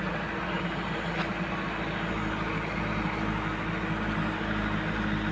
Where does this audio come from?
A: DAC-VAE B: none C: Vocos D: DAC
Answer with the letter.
B